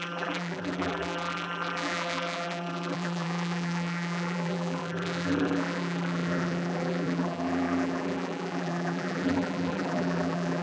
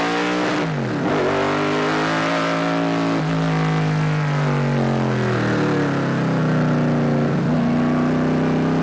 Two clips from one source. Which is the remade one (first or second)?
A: first